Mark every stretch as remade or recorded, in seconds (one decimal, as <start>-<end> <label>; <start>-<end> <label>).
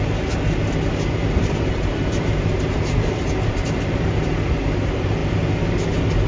0.0-1.2 recorded; 1.2-4.3 remade; 4.3-6.3 recorded